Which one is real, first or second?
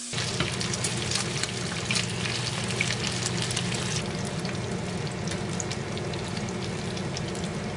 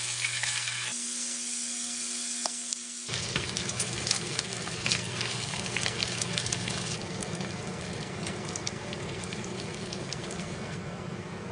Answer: first